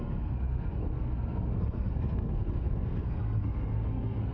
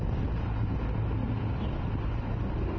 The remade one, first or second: first